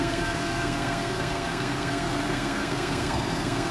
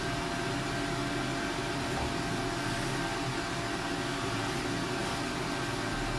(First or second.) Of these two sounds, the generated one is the first